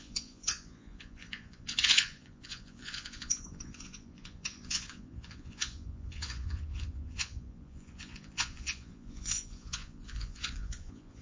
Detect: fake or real fake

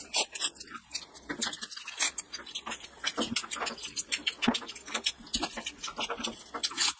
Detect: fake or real real